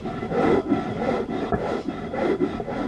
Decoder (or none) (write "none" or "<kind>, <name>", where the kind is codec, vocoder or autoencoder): none